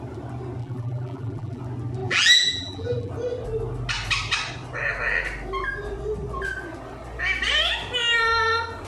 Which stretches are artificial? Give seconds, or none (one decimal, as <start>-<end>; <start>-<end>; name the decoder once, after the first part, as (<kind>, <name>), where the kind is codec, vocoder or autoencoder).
0.6-1.6 (vocoder, BigVGAN v2); 2.0-3.1